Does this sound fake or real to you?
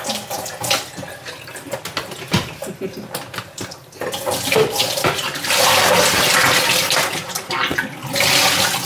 real